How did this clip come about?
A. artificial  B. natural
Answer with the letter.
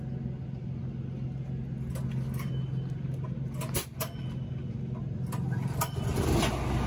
B